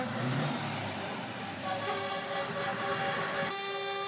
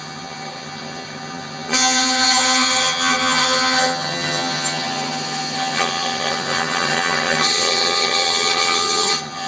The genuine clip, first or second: first